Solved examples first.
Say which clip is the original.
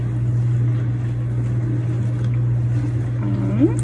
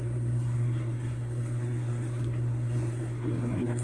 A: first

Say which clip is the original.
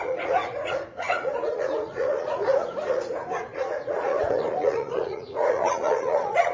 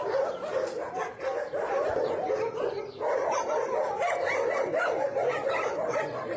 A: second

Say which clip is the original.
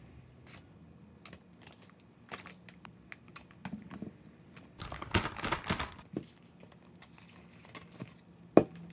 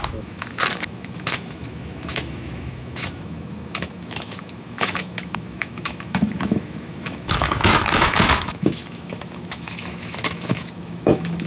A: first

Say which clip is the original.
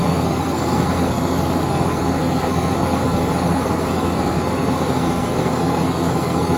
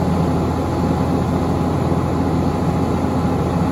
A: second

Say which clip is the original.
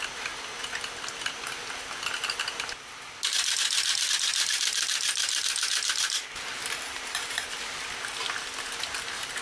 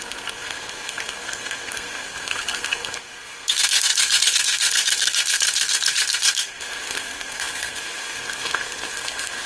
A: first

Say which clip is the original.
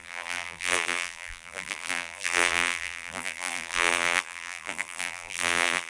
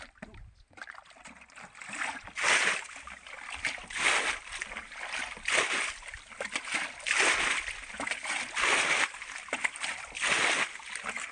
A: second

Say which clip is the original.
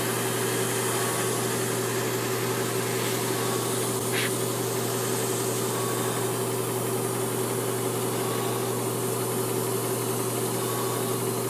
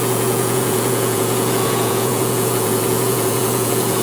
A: first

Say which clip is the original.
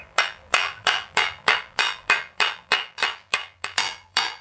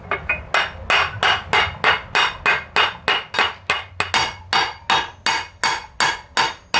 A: second